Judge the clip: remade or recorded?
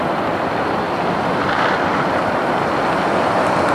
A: recorded